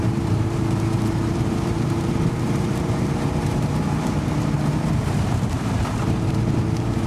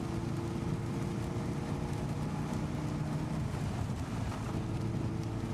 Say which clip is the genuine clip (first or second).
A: second